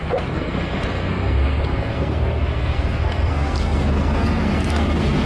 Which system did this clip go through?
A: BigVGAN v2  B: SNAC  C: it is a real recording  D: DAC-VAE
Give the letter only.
B